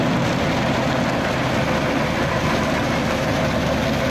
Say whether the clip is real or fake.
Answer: real